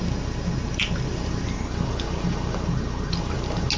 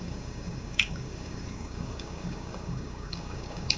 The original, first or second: first